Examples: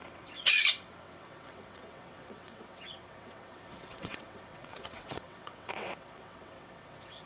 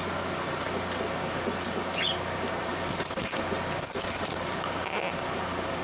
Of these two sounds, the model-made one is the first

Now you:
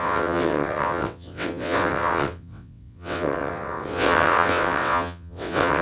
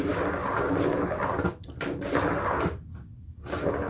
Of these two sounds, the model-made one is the first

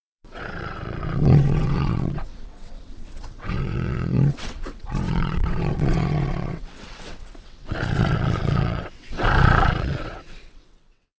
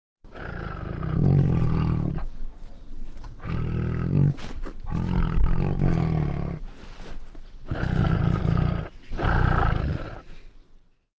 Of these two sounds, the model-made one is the first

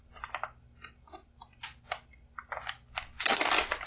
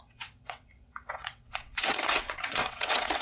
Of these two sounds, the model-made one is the second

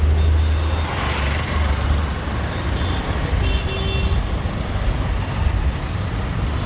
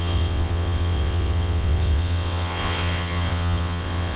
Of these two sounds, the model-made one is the second